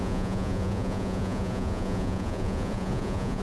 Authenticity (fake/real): fake